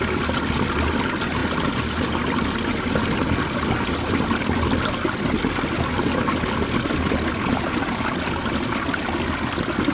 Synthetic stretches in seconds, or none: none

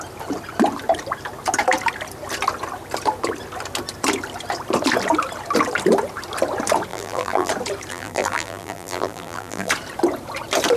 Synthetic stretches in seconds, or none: 6.9-7.5 (vocoder, BigVGAN v2); 7.9-9.7

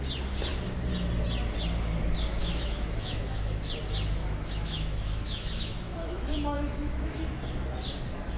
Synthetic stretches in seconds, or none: 2.4-3.7 (autoencoder, DAC-VAE); 4.2-7.2

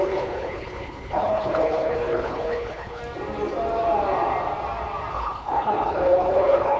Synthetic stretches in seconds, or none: 0.0-3.0 (codec, HILCodec); 5.1-6.8

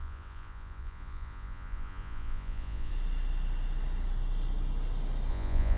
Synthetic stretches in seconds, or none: 0.0-2.9 (vocoder, Vocos); 5.3-5.8